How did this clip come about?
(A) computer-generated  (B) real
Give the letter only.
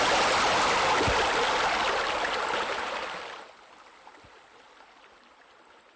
B